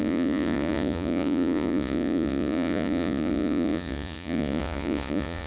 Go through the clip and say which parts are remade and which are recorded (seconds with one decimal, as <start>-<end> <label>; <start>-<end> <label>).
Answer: 0.0-5.5 remade